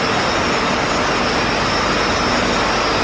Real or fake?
real